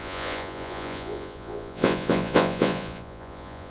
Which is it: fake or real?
fake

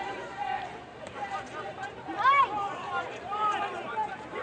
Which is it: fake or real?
fake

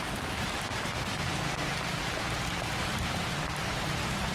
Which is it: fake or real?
fake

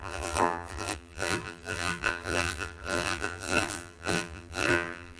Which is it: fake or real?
fake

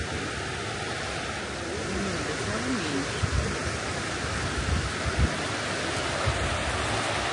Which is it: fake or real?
real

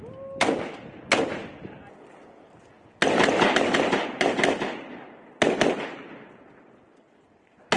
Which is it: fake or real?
real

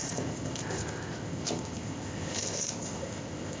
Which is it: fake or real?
fake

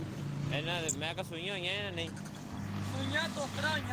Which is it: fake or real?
real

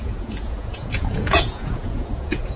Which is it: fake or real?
fake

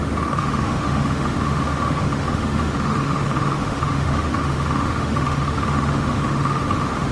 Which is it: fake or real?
fake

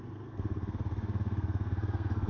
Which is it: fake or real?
fake